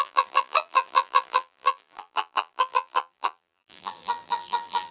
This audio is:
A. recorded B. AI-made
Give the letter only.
B